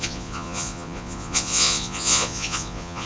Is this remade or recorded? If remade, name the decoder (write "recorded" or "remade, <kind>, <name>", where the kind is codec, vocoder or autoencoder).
remade, vocoder, Vocos